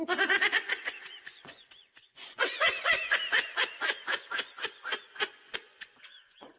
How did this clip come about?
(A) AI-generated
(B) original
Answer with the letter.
A